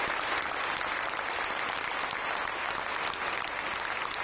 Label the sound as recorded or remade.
recorded